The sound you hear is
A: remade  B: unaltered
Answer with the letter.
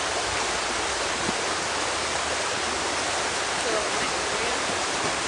B